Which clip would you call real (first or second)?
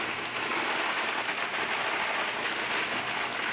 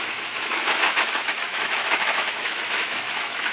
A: first